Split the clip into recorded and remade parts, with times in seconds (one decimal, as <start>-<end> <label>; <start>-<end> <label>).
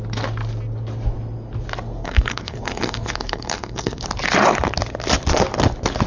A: 0.0-2.0 recorded; 2.0-4.0 remade; 4.0-6.1 recorded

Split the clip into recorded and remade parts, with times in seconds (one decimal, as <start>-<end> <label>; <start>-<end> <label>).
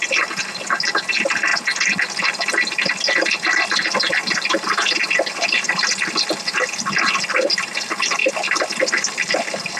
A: 0.0-9.8 recorded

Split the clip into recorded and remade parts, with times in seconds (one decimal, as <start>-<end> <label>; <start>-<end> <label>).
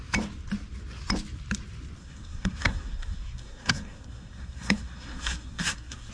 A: 0.0-2.0 recorded; 2.0-6.1 remade